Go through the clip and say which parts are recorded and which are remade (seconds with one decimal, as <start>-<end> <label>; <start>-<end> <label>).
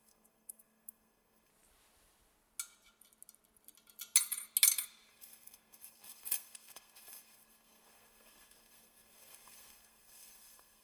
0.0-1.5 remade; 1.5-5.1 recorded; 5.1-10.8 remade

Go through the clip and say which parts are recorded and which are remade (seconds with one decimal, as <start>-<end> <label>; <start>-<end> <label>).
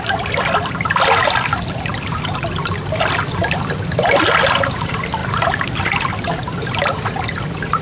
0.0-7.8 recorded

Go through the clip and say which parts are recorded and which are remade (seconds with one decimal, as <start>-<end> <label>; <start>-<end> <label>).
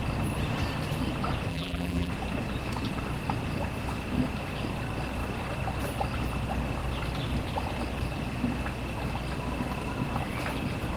0.0-1.5 recorded; 1.5-2.1 remade; 2.1-11.0 recorded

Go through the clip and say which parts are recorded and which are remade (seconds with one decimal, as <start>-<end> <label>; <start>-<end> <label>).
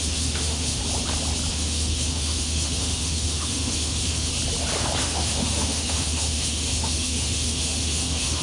0.0-0.8 remade; 0.8-1.5 recorded; 1.5-4.3 remade; 4.3-5.0 recorded; 5.0-8.4 remade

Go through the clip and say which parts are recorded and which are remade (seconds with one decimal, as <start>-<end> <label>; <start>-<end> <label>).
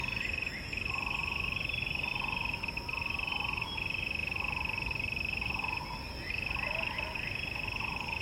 0.0-4.2 recorded; 4.2-5.5 remade; 5.5-8.2 recorded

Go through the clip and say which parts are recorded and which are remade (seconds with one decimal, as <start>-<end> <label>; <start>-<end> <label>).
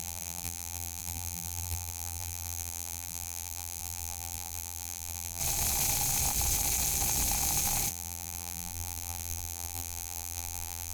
0.0-5.4 remade; 5.4-7.9 recorded; 7.9-10.9 remade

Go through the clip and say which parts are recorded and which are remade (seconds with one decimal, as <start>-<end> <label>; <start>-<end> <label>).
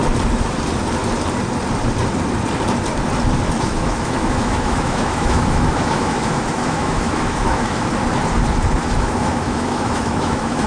0.0-3.6 recorded; 3.6-7.9 remade; 7.9-8.8 recorded; 8.8-10.7 remade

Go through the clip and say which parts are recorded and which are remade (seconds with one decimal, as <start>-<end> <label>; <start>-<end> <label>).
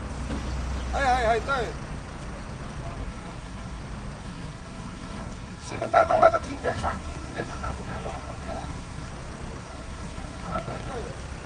0.0-3.0 recorded; 3.0-3.8 remade; 3.8-4.2 recorded; 4.2-9.1 remade; 9.1-9.6 recorded; 9.6-10.9 remade; 10.9-11.5 recorded